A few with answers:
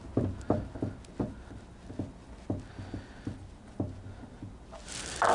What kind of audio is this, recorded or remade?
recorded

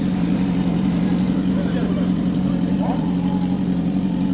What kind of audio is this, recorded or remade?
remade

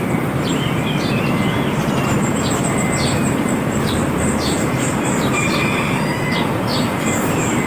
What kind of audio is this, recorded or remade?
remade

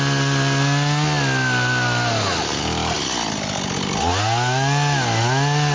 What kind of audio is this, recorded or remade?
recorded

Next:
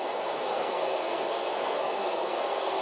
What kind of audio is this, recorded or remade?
remade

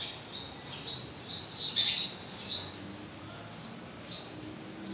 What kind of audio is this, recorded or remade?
recorded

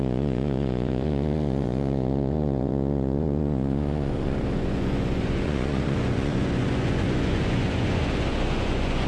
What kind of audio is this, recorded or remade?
remade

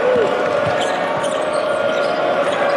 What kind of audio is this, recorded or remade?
recorded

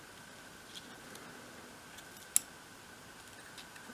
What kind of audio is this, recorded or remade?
recorded